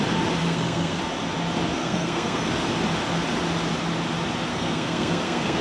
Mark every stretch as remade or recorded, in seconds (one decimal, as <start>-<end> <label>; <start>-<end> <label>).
0.0-0.4 recorded; 0.4-1.0 remade; 1.0-1.8 recorded; 1.8-2.5 remade; 2.5-4.5 recorded; 4.5-5.6 remade